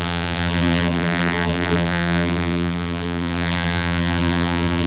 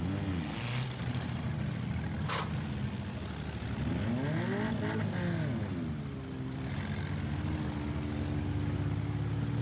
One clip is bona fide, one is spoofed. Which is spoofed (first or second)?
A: first